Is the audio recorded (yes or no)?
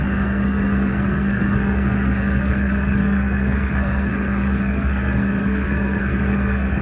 no